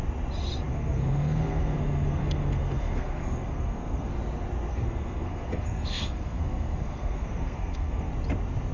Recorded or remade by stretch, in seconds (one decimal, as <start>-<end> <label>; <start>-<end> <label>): 0.0-0.7 recorded; 0.7-4.1 remade; 4.1-4.7 recorded; 4.7-8.1 remade; 8.1-8.7 recorded